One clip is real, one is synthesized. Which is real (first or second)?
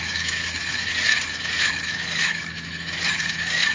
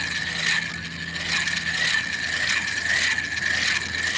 second